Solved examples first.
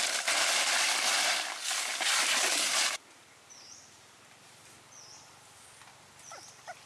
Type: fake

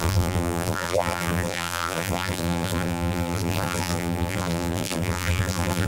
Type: fake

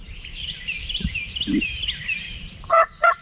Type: fake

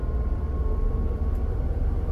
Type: fake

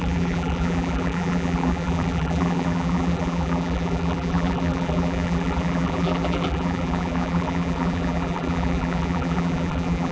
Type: fake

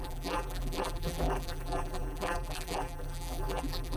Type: fake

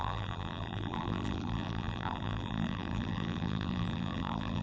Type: fake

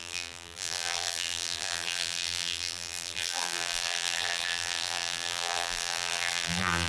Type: fake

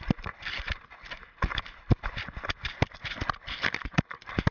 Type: fake